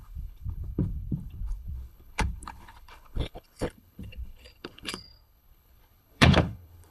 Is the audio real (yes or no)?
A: no